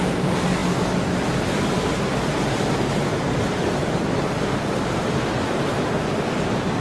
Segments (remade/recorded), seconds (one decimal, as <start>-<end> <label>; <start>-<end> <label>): 0.0-6.8 recorded